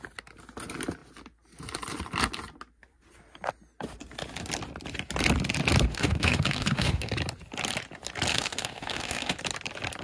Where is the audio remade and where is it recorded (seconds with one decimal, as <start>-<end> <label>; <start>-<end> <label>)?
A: 0.0-5.9 recorded; 5.9-7.1 remade; 7.1-8.3 recorded; 8.3-9.4 remade; 9.4-10.0 recorded